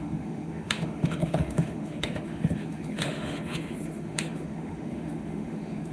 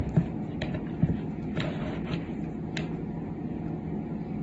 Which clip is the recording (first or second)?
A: second